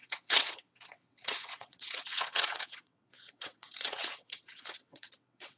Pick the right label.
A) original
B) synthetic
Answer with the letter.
B